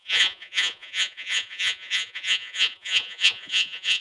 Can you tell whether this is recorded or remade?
remade